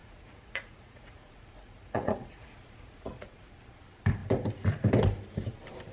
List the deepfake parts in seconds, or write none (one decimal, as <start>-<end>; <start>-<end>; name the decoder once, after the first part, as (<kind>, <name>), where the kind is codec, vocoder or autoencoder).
0.0-3.5 (vocoder, Vocos)